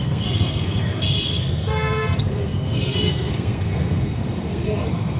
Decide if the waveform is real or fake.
fake